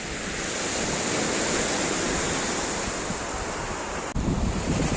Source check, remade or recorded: recorded